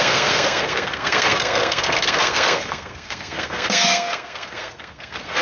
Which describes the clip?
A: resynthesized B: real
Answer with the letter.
A